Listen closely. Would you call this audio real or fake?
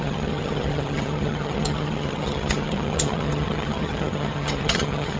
fake